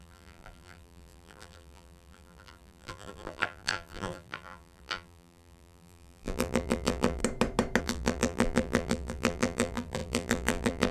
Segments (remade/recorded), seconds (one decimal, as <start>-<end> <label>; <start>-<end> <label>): 0.0-7.2 remade; 7.2-7.8 recorded; 7.8-10.9 remade